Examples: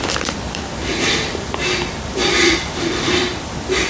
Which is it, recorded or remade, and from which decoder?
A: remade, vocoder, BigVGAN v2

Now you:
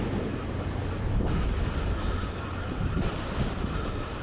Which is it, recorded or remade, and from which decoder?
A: recorded